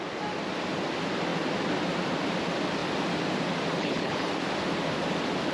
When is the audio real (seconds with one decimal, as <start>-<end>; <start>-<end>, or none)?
0.0-3.8; 4.3-5.5